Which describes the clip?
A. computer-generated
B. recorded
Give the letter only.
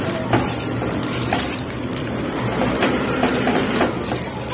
A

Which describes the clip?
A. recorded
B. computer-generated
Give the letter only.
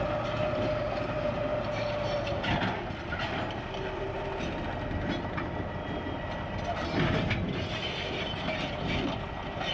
A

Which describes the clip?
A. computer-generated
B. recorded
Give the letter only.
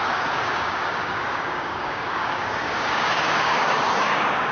A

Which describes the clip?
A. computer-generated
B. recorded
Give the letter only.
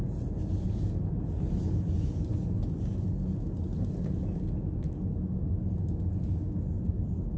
B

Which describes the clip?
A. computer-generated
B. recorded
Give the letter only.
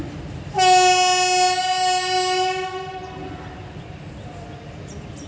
B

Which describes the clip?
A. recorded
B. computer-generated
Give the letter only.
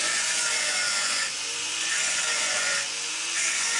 B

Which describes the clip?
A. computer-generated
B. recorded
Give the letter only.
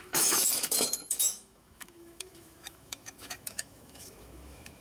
A